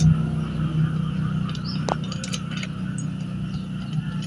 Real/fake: real